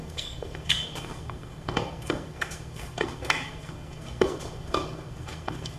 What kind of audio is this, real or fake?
fake